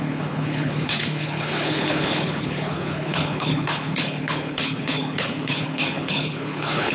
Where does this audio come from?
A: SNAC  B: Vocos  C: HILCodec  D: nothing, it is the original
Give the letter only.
C